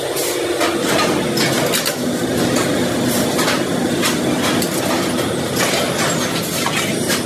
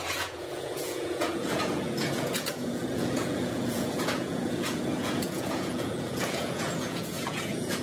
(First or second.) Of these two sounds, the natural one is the first